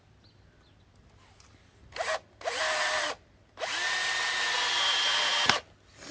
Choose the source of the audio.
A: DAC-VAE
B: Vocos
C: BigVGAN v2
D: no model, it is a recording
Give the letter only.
D